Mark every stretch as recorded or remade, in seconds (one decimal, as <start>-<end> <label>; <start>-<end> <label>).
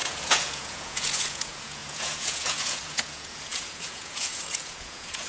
0.0-5.3 remade